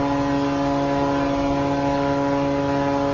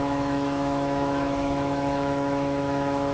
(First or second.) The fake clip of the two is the second